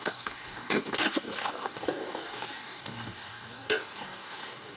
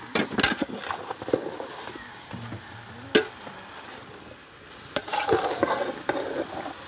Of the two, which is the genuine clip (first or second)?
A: second